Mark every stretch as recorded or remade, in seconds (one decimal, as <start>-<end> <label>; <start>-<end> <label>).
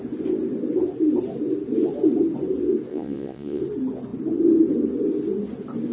0.0-2.9 recorded; 2.9-3.6 remade; 3.6-5.9 recorded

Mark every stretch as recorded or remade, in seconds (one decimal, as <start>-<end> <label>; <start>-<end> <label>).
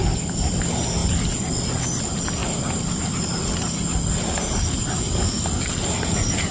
0.0-6.5 recorded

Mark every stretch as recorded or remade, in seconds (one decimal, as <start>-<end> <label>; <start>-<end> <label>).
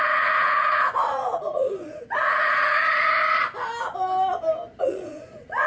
0.0-3.2 remade; 3.2-4.8 recorded; 4.8-5.7 remade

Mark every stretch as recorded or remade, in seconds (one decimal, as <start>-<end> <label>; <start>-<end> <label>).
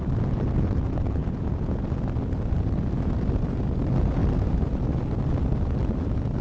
0.0-1.2 recorded; 1.2-1.9 remade; 1.9-6.4 recorded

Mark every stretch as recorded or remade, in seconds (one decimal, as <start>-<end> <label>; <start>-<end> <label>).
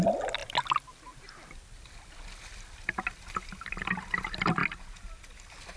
0.0-5.8 recorded